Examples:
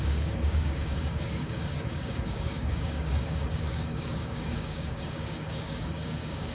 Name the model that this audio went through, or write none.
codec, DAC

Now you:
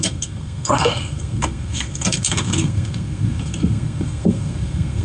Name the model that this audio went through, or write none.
codec, SNAC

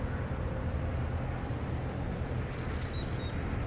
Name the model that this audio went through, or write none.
none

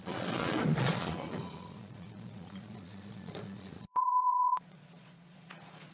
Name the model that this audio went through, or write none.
vocoder, Vocos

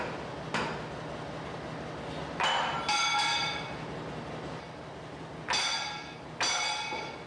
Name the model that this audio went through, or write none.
none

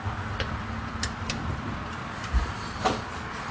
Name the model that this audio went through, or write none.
vocoder, BigVGAN v2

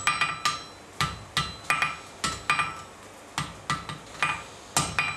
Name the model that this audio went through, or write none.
none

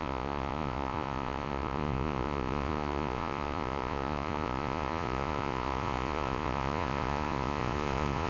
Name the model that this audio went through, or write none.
vocoder, Vocos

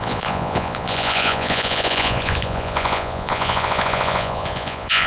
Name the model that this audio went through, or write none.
vocoder, Vocos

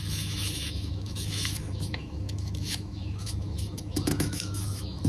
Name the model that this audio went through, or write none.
autoencoder, DAC-VAE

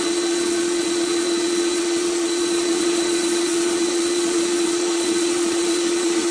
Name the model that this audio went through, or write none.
vocoder, Vocos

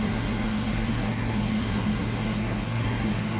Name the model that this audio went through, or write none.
codec, SNAC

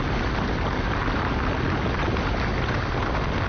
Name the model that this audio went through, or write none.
none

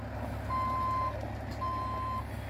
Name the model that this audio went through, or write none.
none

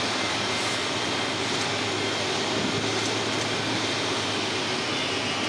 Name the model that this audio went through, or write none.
none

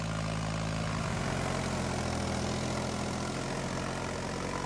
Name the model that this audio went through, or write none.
none